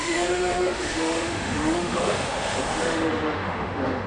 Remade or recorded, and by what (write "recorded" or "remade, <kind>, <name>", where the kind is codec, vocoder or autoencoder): remade, autoencoder, DAC-VAE